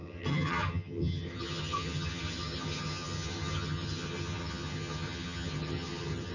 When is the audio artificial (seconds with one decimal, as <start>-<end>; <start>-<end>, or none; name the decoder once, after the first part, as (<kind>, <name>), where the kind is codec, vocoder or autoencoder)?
0.0-6.3 (vocoder, HiFi-GAN)